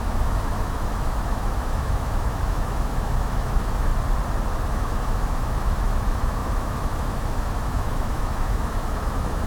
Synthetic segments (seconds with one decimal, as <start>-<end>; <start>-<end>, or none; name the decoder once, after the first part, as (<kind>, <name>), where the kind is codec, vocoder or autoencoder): 0.0-3.9 (autoencoder, DAC-VAE); 4.7-9.5